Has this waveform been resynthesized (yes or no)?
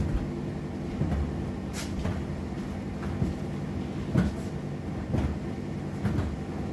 no